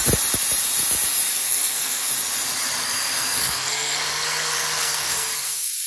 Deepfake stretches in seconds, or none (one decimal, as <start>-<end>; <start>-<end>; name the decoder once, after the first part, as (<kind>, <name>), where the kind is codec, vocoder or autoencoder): 1.3-2.1 (codec, SNAC); 2.8-5.9